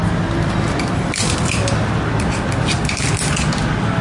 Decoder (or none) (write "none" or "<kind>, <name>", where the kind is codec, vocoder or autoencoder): none